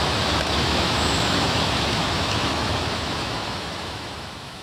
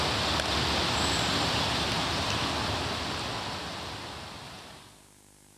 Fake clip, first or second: first